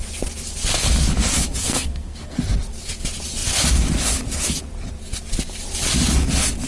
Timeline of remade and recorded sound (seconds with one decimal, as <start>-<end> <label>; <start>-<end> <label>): 0.0-1.6 recorded; 1.6-2.4 remade; 2.4-6.7 recorded